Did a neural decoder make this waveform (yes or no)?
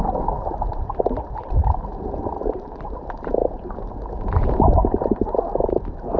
no